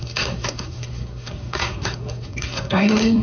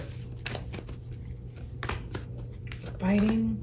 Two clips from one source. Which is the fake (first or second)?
first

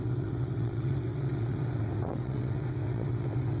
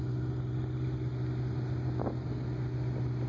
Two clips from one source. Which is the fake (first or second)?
first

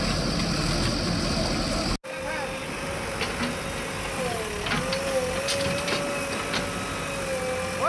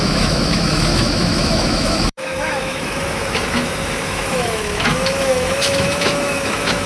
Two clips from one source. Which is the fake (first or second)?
second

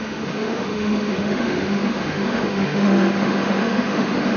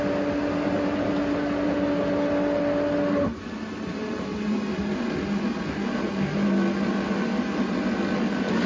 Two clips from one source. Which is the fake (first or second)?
first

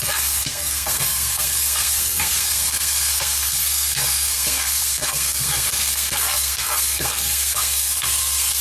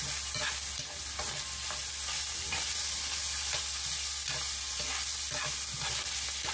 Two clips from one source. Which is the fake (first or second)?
first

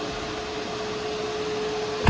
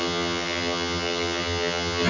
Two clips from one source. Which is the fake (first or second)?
second